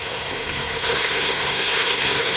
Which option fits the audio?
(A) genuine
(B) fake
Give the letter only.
B